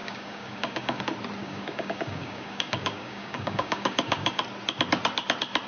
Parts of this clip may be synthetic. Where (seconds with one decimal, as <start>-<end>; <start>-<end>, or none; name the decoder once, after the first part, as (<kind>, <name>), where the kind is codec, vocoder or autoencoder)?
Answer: 0.0-1.0 (codec, DAC); 1.4-4.4